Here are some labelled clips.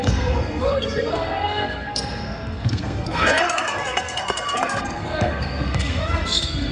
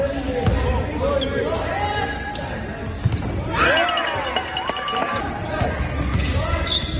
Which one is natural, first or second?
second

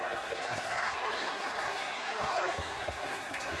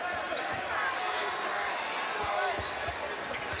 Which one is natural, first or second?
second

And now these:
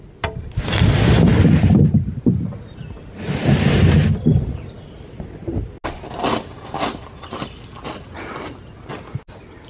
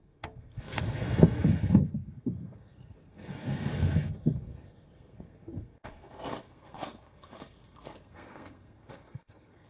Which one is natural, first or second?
first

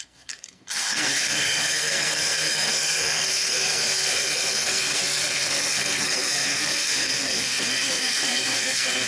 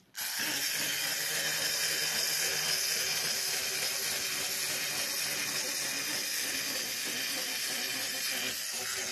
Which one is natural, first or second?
second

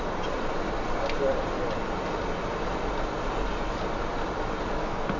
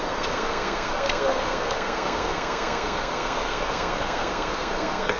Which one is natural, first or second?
first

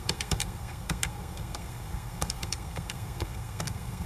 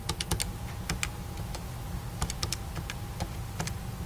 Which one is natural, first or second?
second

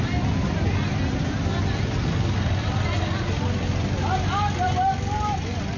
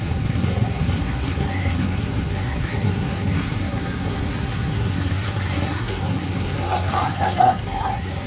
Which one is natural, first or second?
first